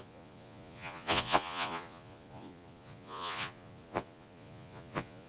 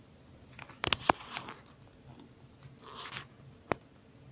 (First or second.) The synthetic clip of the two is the first